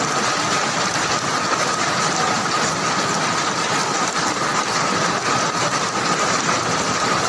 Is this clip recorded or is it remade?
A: recorded